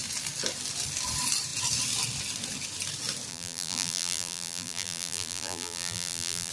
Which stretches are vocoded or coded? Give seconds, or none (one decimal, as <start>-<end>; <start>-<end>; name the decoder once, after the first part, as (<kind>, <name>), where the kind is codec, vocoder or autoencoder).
3.3-6.5 (vocoder, BigVGAN v2)